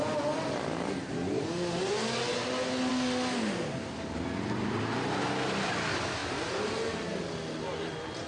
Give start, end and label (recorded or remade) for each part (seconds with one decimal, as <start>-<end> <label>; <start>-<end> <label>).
0.0-8.3 recorded